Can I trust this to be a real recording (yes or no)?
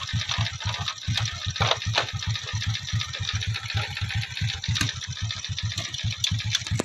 yes